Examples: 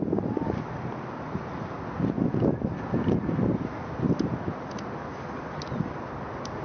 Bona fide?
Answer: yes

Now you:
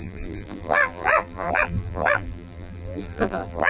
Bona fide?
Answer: no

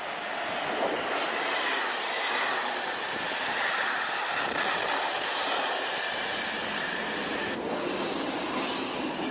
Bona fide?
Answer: yes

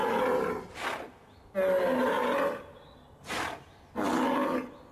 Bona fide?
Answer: yes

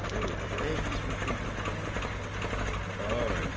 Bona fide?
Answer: yes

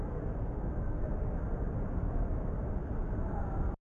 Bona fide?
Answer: yes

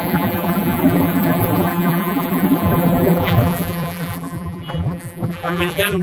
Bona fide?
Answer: no